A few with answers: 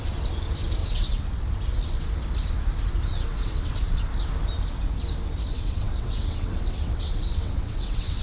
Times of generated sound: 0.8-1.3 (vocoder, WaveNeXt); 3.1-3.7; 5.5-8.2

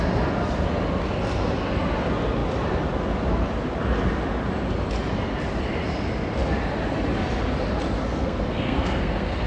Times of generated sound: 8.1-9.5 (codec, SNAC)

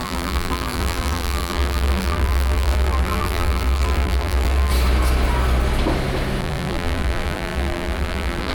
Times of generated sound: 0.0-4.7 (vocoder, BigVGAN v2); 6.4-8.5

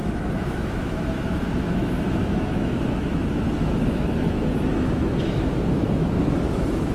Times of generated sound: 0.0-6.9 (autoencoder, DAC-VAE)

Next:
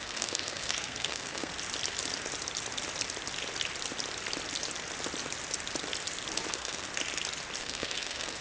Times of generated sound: 0.0-1.5 (codec, SNAC); 6.5-6.9; 7.6-8.4

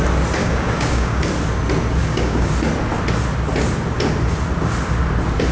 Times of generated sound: 0.4-1.2 (codec, DAC); 2.0-2.5

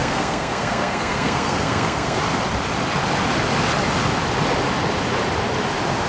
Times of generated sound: 0.0-2.2 (codec, SNAC)

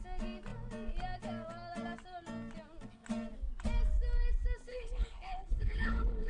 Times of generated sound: 4.7-6.3 (codec, HILCodec)